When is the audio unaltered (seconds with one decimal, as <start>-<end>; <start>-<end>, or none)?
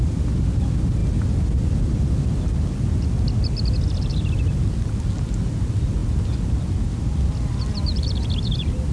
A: 0.0-8.9